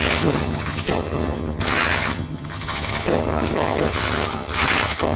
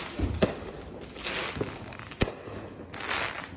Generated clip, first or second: first